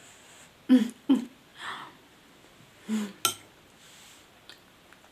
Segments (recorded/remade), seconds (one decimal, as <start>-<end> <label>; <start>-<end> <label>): 0.0-5.1 recorded